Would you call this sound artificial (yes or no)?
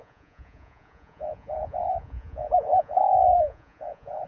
yes